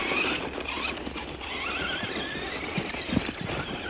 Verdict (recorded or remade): recorded